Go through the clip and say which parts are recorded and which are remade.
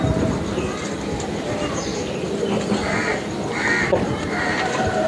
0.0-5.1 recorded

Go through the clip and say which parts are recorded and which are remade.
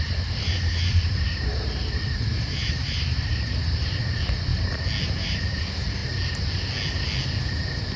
0.0-4.5 remade; 4.5-5.1 recorded; 5.1-6.0 remade; 6.0-8.0 recorded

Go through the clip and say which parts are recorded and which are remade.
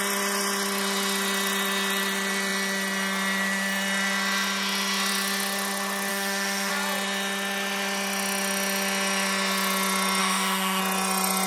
0.0-6.1 recorded; 6.1-6.7 remade; 6.7-10.2 recorded; 10.2-10.8 remade; 10.8-11.5 recorded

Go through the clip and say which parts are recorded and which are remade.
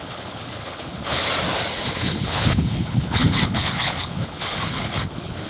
0.0-1.2 remade; 1.2-1.9 recorded; 1.9-5.5 remade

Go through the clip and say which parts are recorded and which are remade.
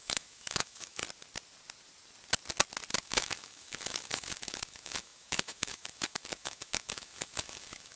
0.0-1.0 remade; 1.0-2.9 recorded; 2.9-8.0 remade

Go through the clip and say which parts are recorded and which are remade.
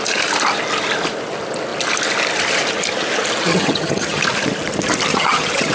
0.0-3.5 recorded; 3.5-4.2 remade; 4.2-5.1 recorded; 5.1-5.7 remade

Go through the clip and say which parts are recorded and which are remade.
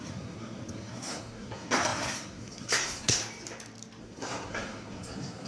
0.0-3.2 remade; 3.2-4.0 recorded; 4.0-5.5 remade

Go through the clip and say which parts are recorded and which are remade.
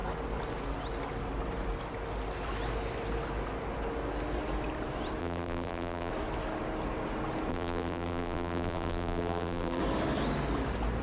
0.0-5.2 recorded; 5.2-6.1 remade; 6.1-7.5 recorded; 7.5-9.8 remade; 9.8-11.0 recorded